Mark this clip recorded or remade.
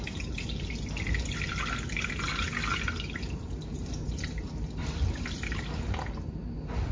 recorded